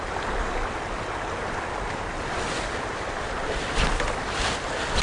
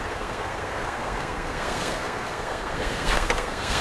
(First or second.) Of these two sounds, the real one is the first